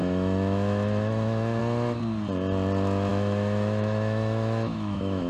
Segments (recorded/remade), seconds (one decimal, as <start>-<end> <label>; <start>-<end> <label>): 0.0-1.6 remade; 1.6-3.1 recorded; 3.1-5.3 remade